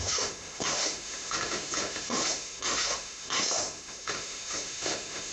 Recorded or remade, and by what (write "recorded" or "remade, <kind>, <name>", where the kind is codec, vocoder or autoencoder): remade, autoencoder, DAC-VAE